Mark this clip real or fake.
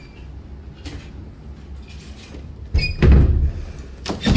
real